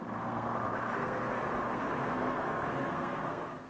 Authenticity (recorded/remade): remade